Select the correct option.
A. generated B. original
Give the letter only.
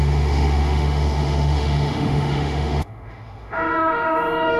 A